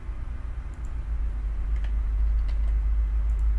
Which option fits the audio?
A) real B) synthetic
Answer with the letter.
A